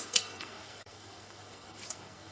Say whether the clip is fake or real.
fake